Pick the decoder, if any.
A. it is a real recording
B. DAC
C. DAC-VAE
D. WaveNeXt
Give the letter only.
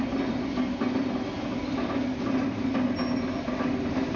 A